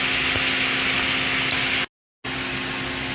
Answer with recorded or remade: recorded